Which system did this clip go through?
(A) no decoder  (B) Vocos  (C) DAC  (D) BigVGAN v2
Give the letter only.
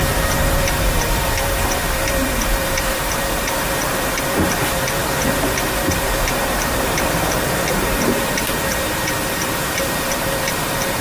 D